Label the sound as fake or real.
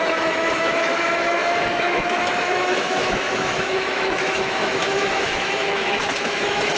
fake